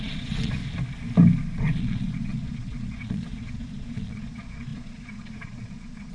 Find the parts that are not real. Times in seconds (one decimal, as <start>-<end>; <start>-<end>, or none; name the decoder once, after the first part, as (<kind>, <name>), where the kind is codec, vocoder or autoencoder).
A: 0.0-0.6 (vocoder, Vocos); 1.6-6.1

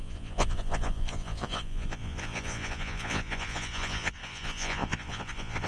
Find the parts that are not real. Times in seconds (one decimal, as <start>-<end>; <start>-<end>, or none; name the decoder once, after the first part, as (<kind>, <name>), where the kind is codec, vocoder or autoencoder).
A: 0.0-5.7 (vocoder, Vocos)

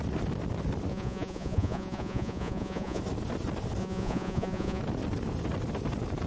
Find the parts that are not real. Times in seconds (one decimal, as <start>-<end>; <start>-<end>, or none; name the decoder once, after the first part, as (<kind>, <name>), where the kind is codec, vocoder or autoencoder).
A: 0.9-3.0 (vocoder, Vocos); 3.8-4.8

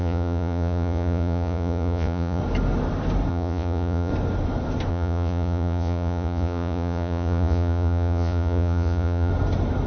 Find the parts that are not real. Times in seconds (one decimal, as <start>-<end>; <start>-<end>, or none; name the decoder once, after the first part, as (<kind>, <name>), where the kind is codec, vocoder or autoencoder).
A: 0.0-2.4 (vocoder, Vocos); 3.3-4.1; 4.9-9.3

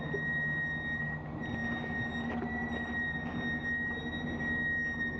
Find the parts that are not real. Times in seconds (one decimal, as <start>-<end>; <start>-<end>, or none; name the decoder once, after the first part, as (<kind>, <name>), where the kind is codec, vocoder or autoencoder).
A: none